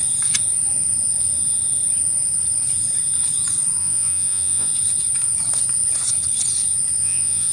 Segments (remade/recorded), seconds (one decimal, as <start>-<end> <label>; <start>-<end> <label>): 0.0-3.8 recorded; 3.8-4.7 remade; 4.7-7.0 recorded; 7.0-7.5 remade